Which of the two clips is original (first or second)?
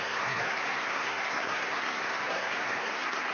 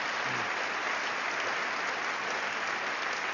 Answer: second